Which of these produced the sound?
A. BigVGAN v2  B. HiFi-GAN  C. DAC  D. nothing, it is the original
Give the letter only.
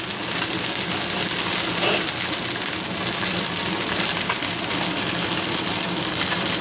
D